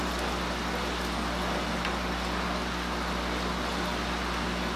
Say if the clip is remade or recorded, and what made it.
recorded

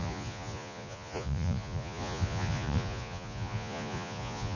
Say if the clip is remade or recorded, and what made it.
remade, vocoder, Vocos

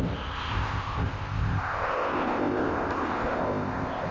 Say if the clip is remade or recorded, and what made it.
remade, codec, ZipCodec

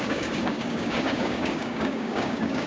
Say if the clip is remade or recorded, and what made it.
remade, codec, DAC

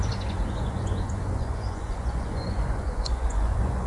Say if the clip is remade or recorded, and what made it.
remade, vocoder, Vocos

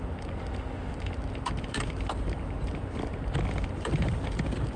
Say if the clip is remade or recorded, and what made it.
recorded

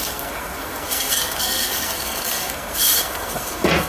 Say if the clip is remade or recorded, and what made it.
remade, codec, SNAC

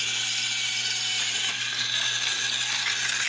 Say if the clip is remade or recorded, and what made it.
recorded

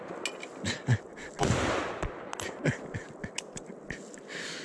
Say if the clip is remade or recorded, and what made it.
recorded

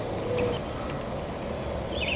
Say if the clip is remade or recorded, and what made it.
recorded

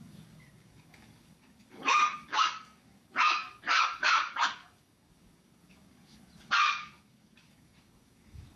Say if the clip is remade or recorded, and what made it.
remade, codec, DAC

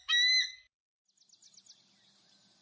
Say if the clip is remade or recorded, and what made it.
recorded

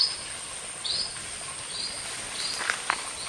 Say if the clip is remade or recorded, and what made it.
recorded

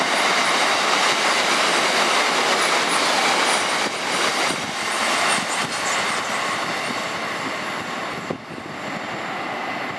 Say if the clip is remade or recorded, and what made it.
recorded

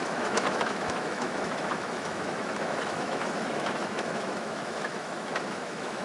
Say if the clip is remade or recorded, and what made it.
remade, autoencoder, DAC-VAE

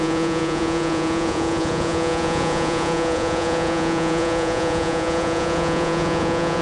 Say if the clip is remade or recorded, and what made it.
remade, vocoder, Vocos